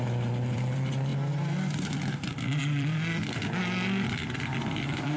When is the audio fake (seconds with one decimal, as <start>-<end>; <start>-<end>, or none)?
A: 0.0-1.1; 2.6-3.6